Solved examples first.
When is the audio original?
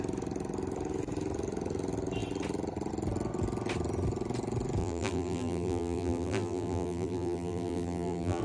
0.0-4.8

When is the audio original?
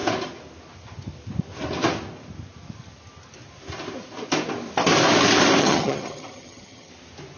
0.0-5.6; 6.9-7.4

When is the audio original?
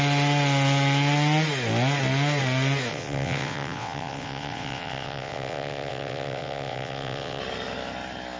0.0-2.9; 7.4-8.4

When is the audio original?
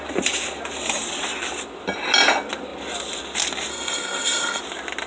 0.0-3.7; 4.6-5.1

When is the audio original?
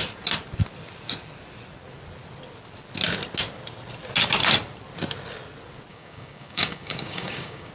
0.0-5.9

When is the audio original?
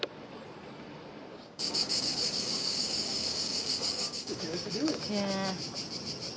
0.0-1.3; 5.1-6.4